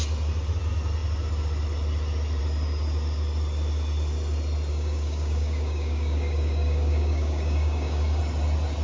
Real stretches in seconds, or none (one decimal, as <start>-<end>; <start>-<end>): 0.0-4.7; 8.2-8.8